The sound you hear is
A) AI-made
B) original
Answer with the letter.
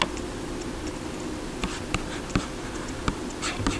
B